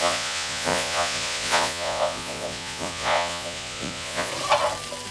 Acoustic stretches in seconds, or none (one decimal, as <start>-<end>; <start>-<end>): 4.3-5.1